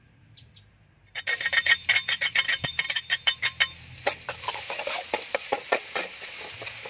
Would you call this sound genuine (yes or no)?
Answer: yes